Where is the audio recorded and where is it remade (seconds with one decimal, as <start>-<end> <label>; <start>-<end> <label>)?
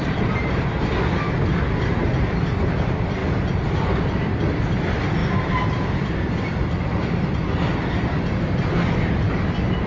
0.0-9.9 recorded